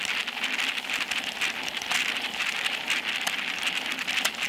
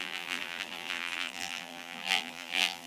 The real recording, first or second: first